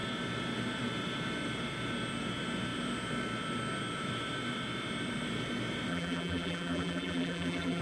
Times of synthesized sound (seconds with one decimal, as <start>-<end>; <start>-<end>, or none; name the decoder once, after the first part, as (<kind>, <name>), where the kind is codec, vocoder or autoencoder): 5.9-7.8 (vocoder, BigVGAN v2)